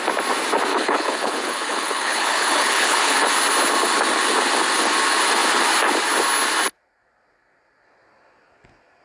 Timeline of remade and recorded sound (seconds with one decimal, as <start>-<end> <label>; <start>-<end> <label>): 0.0-0.7 recorded; 0.7-3.3 remade; 3.3-9.0 recorded